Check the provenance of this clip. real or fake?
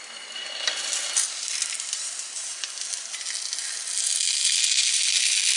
real